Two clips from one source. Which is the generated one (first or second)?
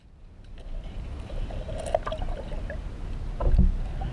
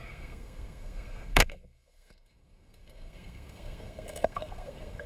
second